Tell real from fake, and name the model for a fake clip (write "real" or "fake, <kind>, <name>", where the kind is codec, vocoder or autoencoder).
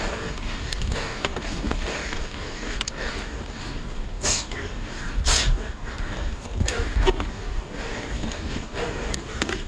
fake, codec, DAC